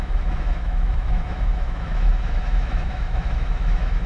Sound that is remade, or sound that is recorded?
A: remade